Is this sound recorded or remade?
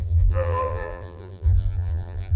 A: remade